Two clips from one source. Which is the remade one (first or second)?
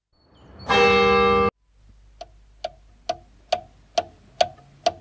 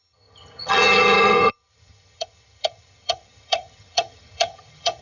second